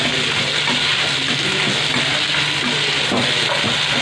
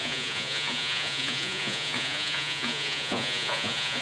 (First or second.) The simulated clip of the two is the second